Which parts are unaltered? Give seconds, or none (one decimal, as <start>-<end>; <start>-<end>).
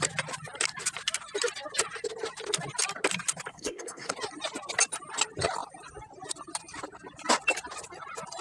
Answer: 0.0-3.5; 4.1-8.4